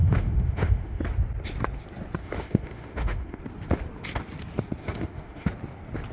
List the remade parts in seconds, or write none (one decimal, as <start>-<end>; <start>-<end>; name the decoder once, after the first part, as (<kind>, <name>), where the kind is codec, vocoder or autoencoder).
0.0-1.0 (autoencoder, DAC-VAE); 2.2-3.4; 4.8-5.5